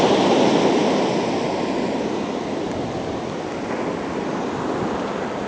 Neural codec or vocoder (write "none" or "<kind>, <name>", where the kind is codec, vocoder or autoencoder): none